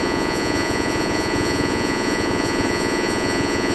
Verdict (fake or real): fake